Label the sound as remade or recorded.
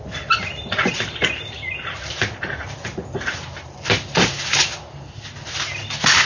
recorded